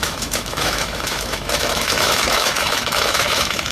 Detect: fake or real fake